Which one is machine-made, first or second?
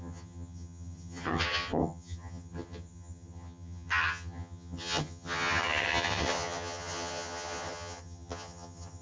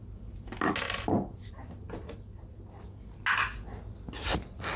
first